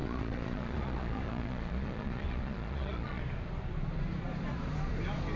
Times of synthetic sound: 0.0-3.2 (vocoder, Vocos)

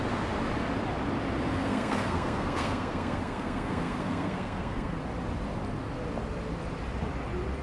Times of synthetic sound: 1.5-5.0 (codec, SNAC)